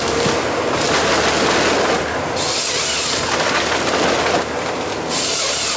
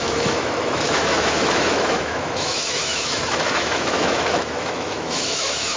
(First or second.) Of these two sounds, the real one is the first